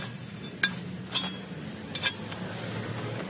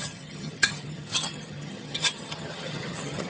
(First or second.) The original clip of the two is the first